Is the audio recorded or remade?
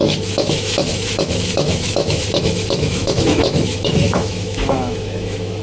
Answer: remade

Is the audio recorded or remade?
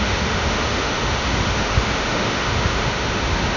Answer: remade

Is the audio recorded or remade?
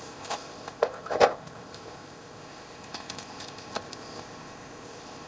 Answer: remade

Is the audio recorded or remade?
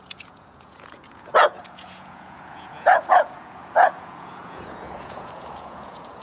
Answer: remade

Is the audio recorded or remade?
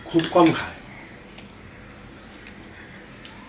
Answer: recorded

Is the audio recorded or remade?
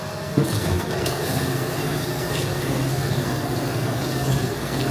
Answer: remade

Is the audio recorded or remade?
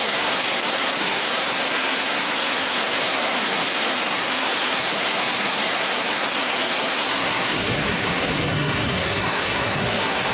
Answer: remade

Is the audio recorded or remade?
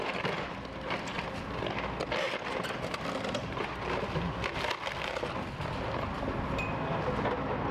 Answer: recorded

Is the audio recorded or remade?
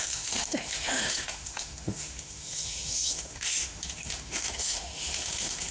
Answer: remade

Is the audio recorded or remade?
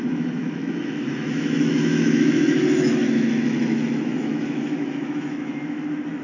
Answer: remade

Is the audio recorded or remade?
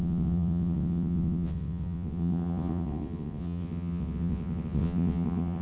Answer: remade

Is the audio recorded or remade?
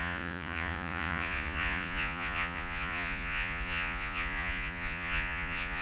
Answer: remade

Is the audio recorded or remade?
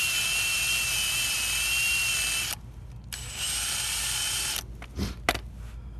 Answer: recorded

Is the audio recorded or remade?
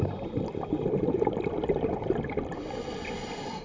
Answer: recorded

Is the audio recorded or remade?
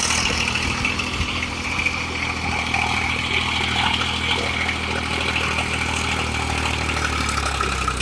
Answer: recorded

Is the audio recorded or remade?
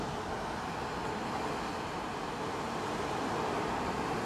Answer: recorded